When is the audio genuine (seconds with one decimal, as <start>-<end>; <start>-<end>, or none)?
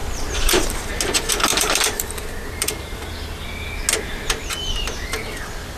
0.9-1.5; 3.1-5.8